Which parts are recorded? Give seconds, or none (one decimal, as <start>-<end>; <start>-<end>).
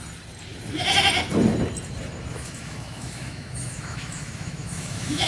0.0-2.3